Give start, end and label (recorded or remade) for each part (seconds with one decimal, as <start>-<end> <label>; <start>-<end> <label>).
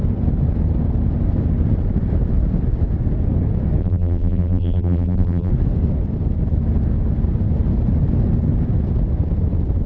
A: 0.0-3.8 recorded; 3.8-5.5 remade; 5.5-9.9 recorded